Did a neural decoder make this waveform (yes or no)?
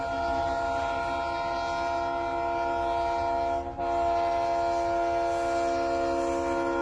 no